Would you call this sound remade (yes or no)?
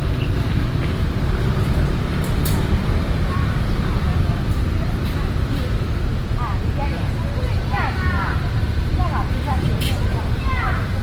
yes